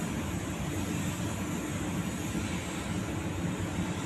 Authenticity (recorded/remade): recorded